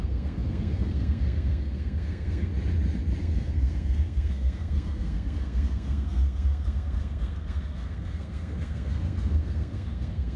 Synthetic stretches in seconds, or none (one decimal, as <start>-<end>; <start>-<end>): 0.0-2.5; 3.2-10.4